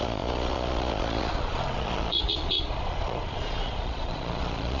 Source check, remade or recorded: remade